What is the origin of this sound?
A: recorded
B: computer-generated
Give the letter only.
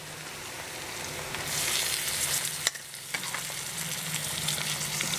A